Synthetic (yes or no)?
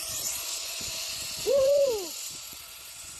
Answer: yes